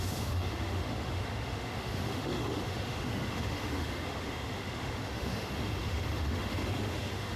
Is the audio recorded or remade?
remade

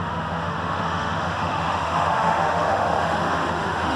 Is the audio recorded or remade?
remade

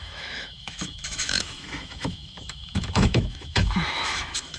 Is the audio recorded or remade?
remade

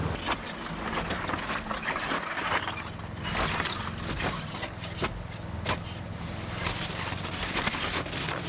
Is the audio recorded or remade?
recorded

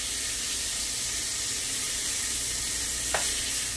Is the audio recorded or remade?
recorded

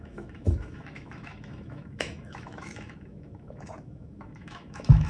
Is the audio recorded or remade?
remade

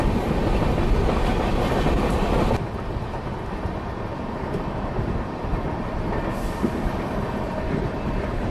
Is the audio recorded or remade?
recorded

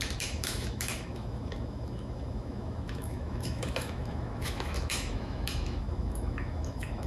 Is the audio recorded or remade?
remade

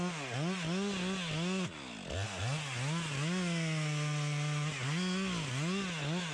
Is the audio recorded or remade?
recorded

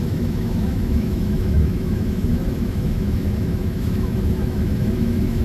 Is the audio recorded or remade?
remade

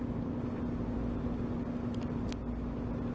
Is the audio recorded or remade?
recorded